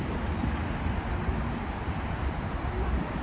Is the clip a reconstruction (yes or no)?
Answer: no